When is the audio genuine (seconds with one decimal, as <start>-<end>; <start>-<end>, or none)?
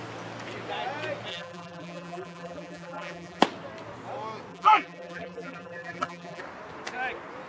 0.0-1.3; 3.4-4.5; 6.4-7.5